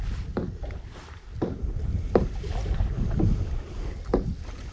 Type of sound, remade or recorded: recorded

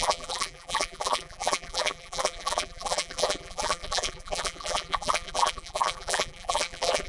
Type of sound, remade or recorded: remade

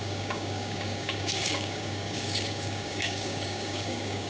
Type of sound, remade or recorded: remade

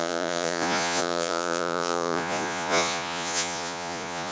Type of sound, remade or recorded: remade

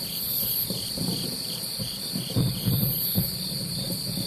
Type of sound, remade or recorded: remade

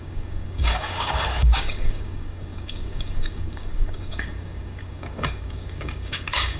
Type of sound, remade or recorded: remade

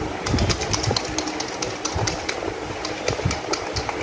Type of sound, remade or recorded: recorded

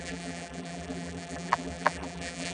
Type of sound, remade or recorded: remade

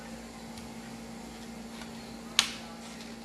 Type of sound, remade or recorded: recorded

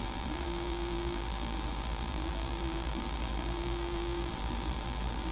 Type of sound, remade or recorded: remade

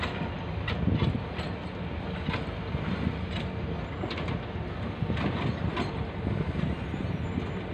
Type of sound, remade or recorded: recorded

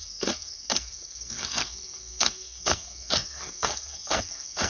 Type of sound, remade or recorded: remade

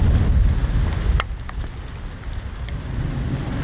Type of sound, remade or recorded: recorded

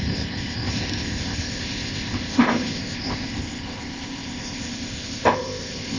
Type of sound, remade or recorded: remade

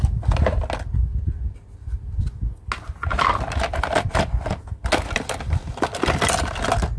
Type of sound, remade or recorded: recorded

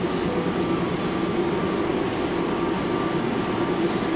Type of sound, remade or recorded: recorded